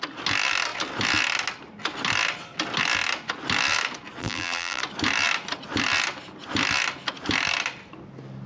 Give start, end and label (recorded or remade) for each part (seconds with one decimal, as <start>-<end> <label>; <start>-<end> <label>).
0.0-4.2 recorded; 4.2-4.8 remade; 4.8-8.5 recorded